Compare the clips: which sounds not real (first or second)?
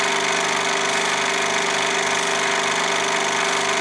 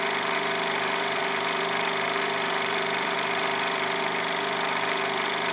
second